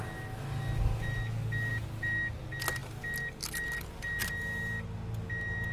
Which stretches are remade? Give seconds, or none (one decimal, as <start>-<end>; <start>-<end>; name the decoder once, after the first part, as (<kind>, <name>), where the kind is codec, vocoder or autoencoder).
none

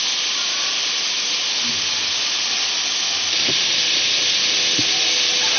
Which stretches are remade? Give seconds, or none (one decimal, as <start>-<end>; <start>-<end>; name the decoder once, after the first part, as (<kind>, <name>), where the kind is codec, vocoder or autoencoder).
none

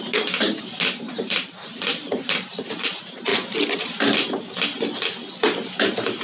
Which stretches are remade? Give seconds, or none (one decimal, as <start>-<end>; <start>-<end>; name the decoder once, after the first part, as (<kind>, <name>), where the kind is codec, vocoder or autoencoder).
0.0-3.3 (vocoder, BigVGAN v2); 5.8-6.2

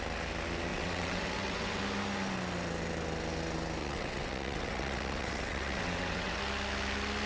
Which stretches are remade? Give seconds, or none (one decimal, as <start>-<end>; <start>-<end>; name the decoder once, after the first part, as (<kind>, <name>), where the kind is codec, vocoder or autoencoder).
0.7-1.8 (vocoder, WaveNeXt); 3.8-6.4